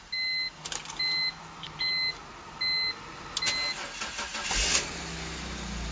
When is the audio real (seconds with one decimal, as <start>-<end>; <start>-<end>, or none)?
0.0-5.9